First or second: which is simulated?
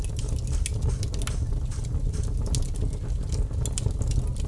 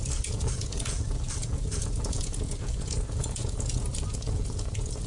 second